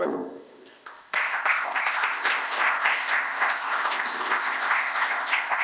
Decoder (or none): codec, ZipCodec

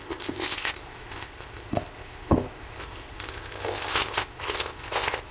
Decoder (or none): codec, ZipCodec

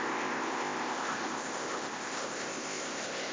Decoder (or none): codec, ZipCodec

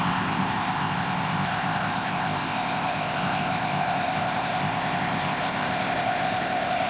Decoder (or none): codec, ZipCodec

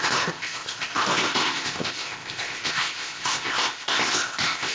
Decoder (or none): codec, ZipCodec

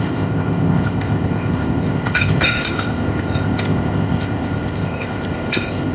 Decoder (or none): codec, ZipCodec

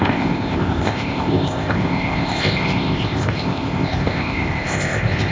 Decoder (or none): codec, ZipCodec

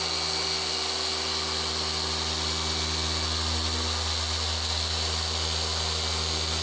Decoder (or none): none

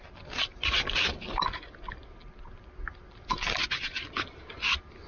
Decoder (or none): none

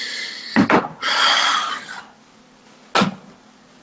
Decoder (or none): none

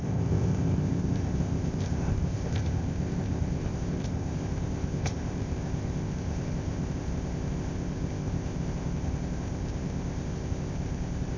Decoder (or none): codec, ZipCodec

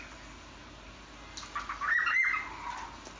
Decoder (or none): none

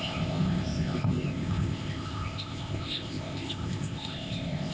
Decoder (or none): codec, ZipCodec